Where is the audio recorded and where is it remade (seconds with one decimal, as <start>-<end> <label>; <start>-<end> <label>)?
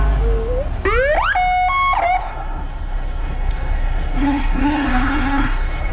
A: 0.0-2.2 recorded; 2.2-5.9 remade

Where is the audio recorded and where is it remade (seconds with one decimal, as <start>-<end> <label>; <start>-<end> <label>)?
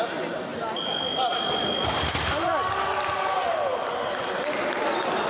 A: 0.0-5.3 recorded